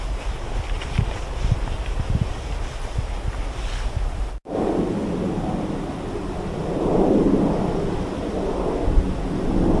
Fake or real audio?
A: real